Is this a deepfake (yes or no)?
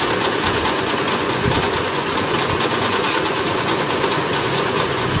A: yes